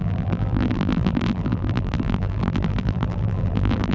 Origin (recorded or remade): remade